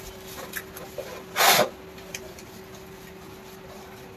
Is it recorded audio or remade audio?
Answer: recorded